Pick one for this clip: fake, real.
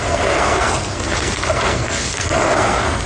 fake